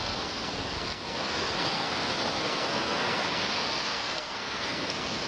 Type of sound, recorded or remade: remade